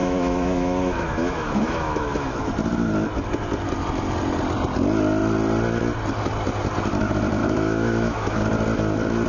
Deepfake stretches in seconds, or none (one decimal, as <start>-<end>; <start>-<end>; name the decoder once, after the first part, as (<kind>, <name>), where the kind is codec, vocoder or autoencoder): 0.0-2.4 (autoencoder, DAC-VAE); 7.4-8.4